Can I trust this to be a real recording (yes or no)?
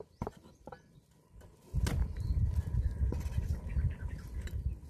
yes